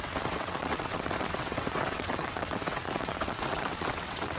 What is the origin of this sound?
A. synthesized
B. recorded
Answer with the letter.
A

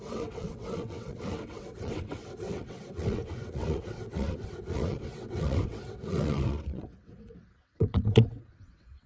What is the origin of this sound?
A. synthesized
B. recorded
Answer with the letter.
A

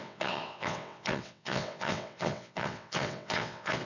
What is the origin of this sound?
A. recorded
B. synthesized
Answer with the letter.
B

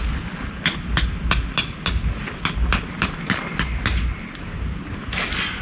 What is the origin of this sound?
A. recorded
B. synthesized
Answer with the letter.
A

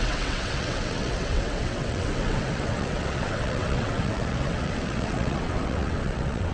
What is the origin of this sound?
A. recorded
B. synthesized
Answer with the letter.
B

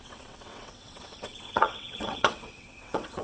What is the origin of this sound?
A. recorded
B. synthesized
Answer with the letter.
B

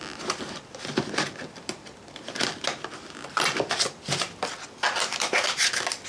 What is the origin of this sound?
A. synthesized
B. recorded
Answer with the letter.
B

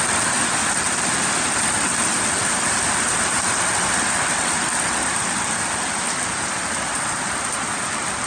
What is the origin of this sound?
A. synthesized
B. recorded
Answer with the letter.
B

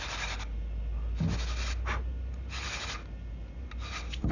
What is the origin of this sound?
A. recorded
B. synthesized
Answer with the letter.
A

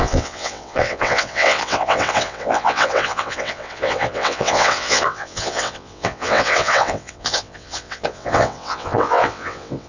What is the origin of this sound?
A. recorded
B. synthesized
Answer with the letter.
B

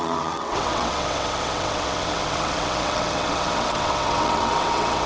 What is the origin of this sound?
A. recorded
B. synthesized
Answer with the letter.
B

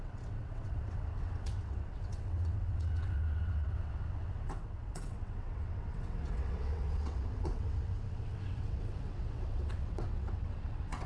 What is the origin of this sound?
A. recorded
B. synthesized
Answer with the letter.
B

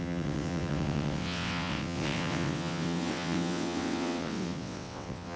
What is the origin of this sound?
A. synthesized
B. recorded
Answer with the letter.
A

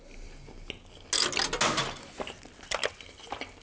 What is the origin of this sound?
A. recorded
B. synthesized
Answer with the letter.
A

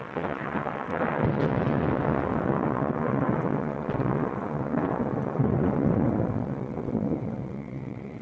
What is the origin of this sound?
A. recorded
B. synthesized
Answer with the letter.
B